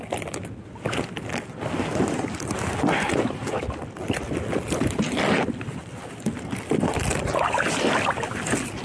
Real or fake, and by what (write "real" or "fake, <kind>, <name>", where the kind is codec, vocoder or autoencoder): real